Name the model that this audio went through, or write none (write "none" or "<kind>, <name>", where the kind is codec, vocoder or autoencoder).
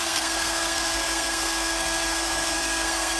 codec, SNAC